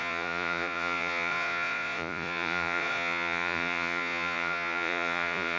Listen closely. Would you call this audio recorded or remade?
remade